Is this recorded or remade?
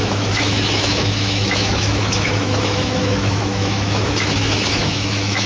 remade